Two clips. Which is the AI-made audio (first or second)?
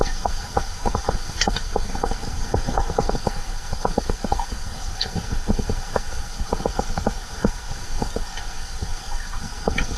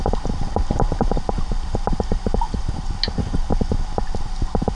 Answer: first